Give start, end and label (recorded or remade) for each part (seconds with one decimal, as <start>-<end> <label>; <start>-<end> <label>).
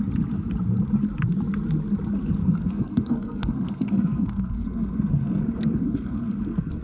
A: 0.0-2.4 recorded; 2.4-6.8 remade